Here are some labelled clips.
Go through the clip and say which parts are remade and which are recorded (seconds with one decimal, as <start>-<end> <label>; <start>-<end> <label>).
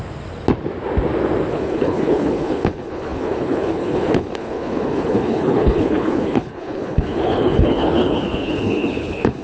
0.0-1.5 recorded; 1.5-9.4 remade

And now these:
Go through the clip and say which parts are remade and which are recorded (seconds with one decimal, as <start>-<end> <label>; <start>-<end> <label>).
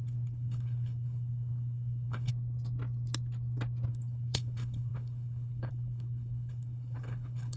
0.0-2.3 remade; 2.3-3.9 recorded; 3.9-7.6 remade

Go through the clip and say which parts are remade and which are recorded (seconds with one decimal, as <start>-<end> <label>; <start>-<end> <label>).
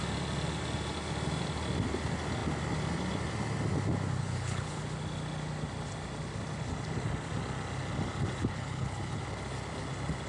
0.0-4.2 recorded; 4.2-4.8 remade; 4.8-8.4 recorded; 8.4-9.2 remade; 9.2-10.3 recorded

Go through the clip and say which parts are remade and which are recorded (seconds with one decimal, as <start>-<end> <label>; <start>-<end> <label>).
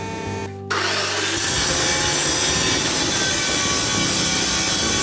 0.0-5.0 recorded